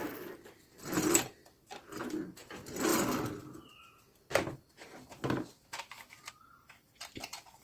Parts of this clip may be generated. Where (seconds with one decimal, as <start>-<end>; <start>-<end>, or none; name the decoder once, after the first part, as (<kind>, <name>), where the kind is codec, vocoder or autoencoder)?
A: none